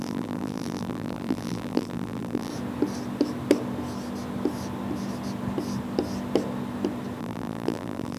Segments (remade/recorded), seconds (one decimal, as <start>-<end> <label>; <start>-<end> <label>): 0.0-2.5 remade; 2.5-7.2 recorded; 7.2-8.2 remade